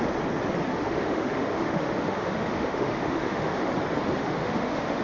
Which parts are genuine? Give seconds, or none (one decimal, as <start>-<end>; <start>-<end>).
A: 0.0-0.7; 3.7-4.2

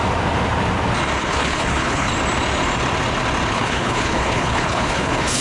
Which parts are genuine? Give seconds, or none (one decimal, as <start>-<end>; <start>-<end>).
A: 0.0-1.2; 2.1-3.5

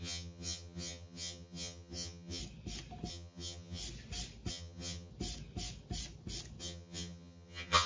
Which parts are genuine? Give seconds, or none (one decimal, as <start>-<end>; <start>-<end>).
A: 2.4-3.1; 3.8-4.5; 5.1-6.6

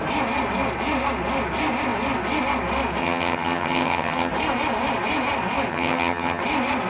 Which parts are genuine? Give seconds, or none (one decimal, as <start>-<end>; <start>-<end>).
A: 0.0-3.0; 4.3-5.7; 6.4-6.9